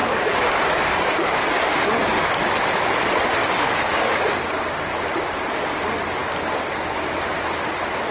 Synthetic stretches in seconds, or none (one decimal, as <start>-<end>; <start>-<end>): 0.0-2.4; 3.4-4.8